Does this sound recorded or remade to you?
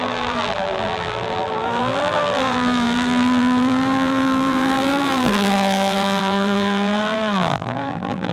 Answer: remade